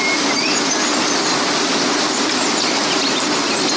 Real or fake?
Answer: real